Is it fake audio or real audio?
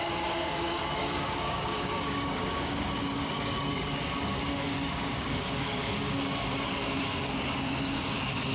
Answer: fake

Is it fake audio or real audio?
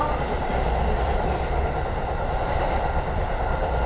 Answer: real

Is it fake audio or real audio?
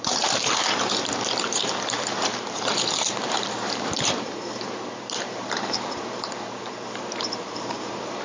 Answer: fake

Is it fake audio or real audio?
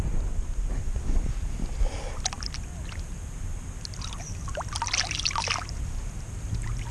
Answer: real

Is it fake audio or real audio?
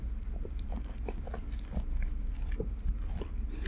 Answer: fake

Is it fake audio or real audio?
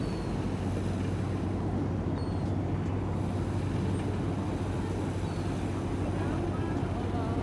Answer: real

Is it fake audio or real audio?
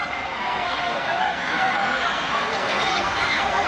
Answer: fake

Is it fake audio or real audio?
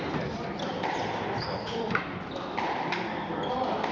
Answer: fake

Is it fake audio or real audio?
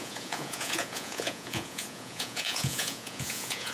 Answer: fake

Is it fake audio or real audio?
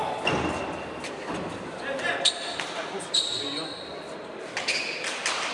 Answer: real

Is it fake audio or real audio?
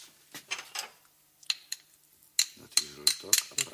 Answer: real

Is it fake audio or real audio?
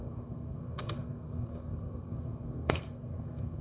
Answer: fake